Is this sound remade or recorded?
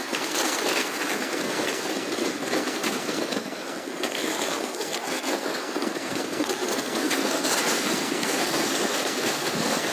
remade